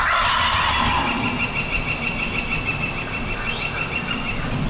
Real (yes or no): yes